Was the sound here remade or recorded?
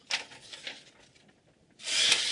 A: recorded